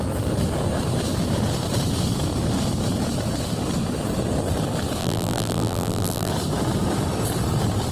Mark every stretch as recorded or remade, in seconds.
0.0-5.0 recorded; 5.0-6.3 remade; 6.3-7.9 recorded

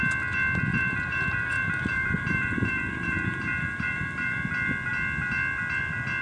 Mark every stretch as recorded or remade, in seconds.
0.0-0.7 recorded; 0.7-4.4 remade; 4.4-6.2 recorded

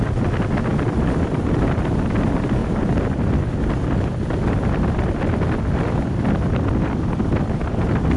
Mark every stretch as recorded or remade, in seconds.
0.0-8.2 remade

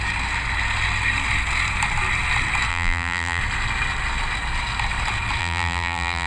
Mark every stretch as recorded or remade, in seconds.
0.0-2.7 recorded; 2.7-3.4 remade; 3.4-5.4 recorded; 5.4-6.3 remade

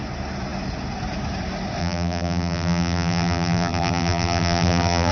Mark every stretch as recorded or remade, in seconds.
0.0-1.8 recorded; 1.8-5.1 remade

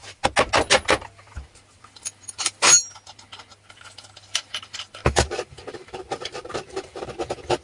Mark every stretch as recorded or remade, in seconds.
0.0-5.0 recorded; 5.0-7.1 remade; 7.1-7.6 recorded

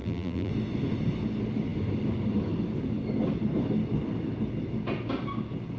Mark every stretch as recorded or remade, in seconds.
0.0-0.5 remade; 0.5-5.8 recorded

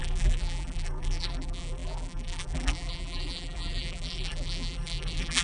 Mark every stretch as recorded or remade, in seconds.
0.0-5.4 remade